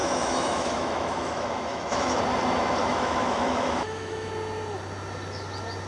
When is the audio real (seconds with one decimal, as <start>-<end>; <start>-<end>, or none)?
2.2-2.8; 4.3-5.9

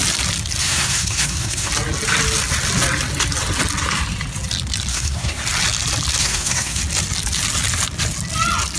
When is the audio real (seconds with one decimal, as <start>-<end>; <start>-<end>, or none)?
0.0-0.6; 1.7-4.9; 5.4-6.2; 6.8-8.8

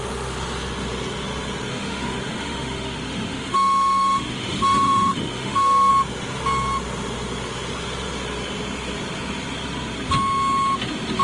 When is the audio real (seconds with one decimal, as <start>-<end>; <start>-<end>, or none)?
0.0-1.7; 5.9-11.2